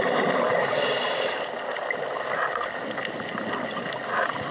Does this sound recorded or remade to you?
recorded